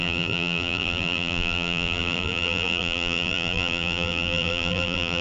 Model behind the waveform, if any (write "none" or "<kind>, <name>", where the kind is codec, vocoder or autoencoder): vocoder, BigVGAN v2